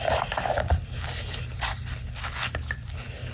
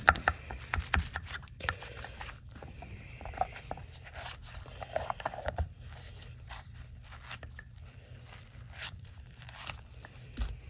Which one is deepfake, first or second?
second